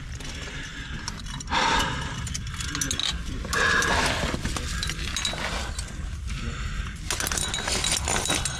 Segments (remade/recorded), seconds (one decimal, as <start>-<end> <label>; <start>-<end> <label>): 0.0-0.7 recorded; 0.7-2.5 remade; 2.5-3.0 recorded; 3.0-5.7 remade; 5.7-8.6 recorded